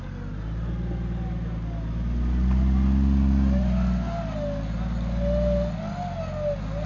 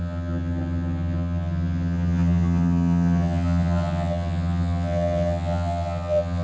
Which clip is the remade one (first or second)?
second